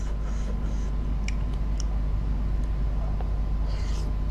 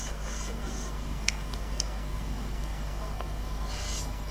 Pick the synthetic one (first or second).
second